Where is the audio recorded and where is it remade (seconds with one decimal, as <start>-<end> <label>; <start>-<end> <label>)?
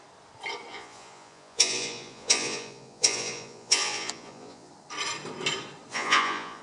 0.0-0.7 recorded; 0.7-4.7 remade; 4.7-5.9 recorded; 5.9-6.6 remade